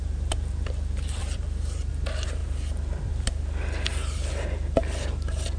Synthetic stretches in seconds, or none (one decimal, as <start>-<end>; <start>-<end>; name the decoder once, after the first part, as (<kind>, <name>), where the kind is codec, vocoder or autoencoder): 0.0-0.6 (vocoder, BigVGAN v2); 1.2-1.9